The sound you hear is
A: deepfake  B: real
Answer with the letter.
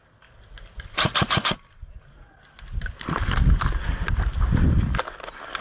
B